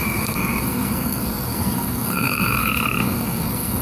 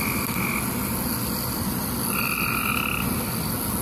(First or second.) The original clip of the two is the second